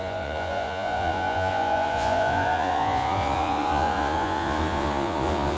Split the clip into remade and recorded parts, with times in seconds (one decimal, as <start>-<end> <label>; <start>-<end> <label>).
0.0-5.6 remade